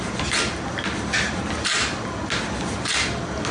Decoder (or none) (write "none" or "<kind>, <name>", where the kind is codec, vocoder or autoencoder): none